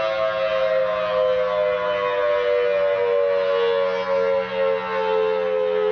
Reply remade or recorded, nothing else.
recorded